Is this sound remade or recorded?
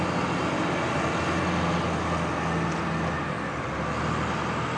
recorded